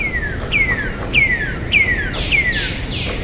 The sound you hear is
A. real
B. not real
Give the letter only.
A